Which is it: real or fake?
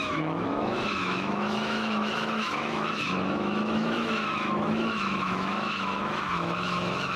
fake